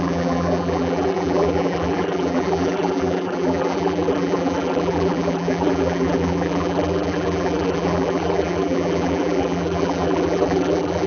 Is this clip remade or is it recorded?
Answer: remade